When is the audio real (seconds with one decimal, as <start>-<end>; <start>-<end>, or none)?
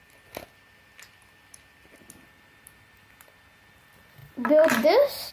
0.0-5.3